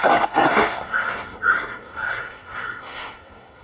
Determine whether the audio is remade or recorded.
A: remade